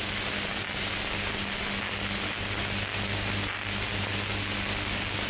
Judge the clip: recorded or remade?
recorded